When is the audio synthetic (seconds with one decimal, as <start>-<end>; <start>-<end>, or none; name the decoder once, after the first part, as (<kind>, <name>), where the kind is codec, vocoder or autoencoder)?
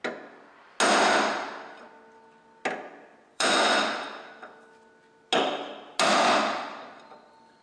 3.2-3.8 (vocoder, Vocos)